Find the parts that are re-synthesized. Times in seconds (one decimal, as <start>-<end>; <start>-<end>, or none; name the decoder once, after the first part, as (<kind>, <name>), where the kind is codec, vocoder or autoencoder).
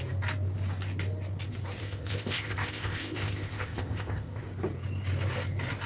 1.8-4.4 (codec, ZipCodec)